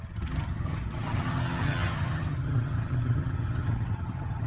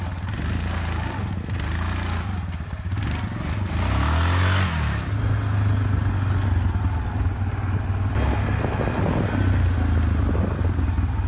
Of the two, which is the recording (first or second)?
second